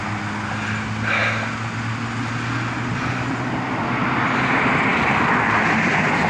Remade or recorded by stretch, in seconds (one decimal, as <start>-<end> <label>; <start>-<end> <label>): 0.0-6.3 recorded